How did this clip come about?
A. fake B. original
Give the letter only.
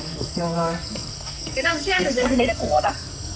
A